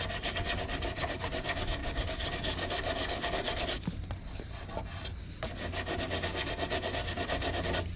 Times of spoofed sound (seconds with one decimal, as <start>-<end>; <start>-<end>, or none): none